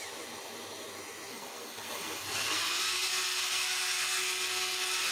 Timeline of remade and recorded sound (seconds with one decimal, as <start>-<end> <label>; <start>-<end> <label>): 0.0-1.3 recorded; 1.3-5.1 remade